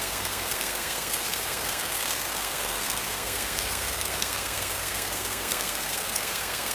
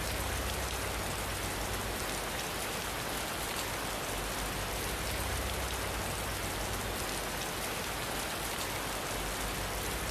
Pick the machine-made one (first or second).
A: first